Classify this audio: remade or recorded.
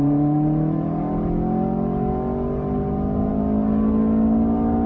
recorded